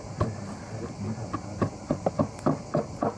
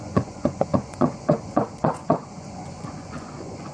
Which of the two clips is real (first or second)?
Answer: first